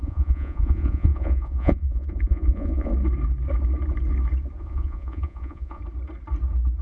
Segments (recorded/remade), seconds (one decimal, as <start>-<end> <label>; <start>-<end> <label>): 0.0-2.9 remade; 2.9-4.6 recorded; 4.6-5.8 remade; 5.8-6.8 recorded